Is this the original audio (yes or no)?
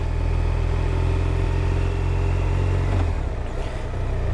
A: yes